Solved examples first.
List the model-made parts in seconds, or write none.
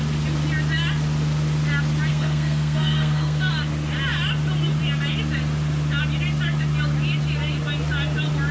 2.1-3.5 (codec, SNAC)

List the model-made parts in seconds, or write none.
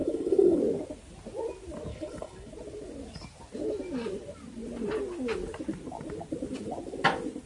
0.0-0.6 (codec, HILCodec); 1.9-2.5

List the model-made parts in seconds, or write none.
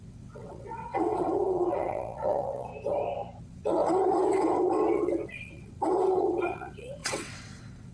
0.0-2.7 (vocoder, WaveNeXt); 3.4-7.9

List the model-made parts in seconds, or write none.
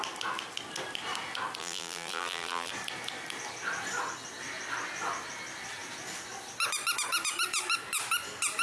1.6-2.7 (vocoder, BigVGAN v2)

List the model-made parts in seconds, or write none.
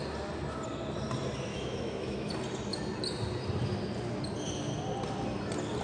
1.5-2.3 (autoencoder, DAC-VAE)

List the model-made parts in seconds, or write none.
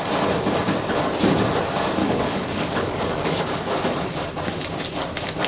2.0-3.4 (codec, DAC)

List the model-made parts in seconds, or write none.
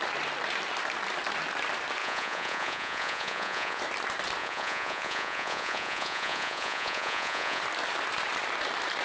2.0-3.8 (vocoder, Vocos); 4.4-7.6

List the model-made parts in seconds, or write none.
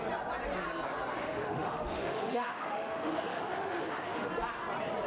1.2-4.3 (autoencoder, DAC-VAE)